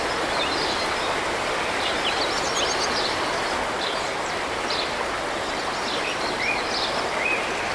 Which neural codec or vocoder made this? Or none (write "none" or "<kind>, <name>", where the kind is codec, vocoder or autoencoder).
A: none